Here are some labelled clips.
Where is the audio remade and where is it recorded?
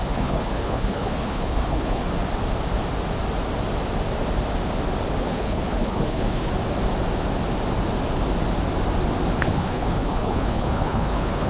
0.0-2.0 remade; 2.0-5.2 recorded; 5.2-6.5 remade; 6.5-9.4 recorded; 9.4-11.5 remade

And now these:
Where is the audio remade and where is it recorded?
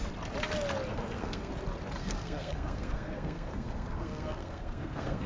0.0-0.9 recorded; 0.9-1.5 remade; 1.5-2.0 recorded; 2.0-5.3 remade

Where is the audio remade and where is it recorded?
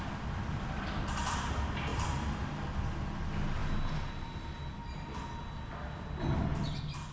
0.0-1.9 recorded; 1.9-2.4 remade; 2.4-7.1 recorded